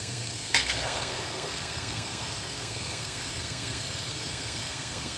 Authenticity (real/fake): fake